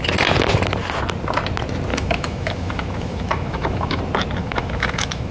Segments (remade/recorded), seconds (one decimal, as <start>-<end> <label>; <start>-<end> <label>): 0.0-1.9 recorded; 1.9-4.0 remade; 4.0-4.4 recorded; 4.4-5.3 remade